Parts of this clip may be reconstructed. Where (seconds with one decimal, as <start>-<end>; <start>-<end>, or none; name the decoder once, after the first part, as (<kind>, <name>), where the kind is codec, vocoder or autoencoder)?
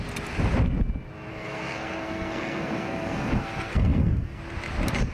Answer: 1.3-4.4 (codec, SNAC)